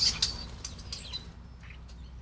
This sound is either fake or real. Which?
real